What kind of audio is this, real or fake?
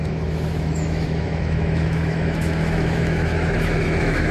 fake